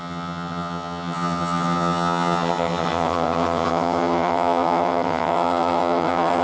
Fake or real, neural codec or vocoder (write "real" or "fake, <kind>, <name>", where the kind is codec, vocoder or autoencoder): fake, vocoder, HiFi-GAN